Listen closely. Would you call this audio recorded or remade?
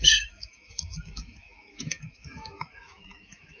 remade